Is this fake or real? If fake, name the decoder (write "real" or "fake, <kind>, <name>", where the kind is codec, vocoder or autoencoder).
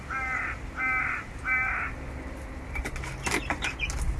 real